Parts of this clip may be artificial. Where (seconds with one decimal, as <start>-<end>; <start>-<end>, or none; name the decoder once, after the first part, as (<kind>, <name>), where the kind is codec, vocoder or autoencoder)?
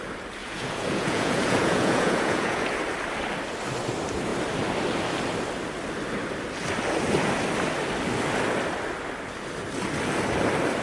0.4-2.7 (vocoder, Vocos)